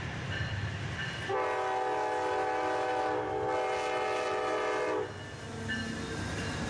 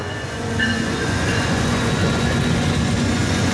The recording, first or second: first